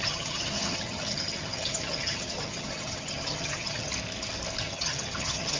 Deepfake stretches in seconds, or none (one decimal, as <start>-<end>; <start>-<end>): 0.0-3.9; 4.6-5.6